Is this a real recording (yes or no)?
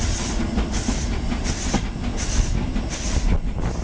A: yes